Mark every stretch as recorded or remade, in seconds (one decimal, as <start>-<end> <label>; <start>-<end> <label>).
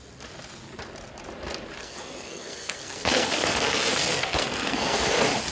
0.0-1.8 recorded; 1.8-5.1 remade; 5.1-5.5 recorded